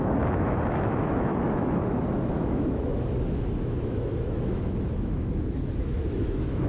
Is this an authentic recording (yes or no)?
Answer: no